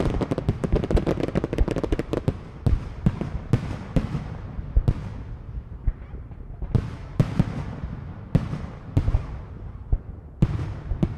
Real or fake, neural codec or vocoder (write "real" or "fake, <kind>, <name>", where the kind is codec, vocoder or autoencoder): real